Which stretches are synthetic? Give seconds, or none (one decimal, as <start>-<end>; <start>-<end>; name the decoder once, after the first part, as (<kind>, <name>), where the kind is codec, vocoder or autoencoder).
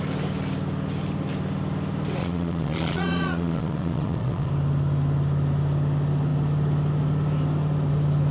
2.2-4.5 (vocoder, Vocos)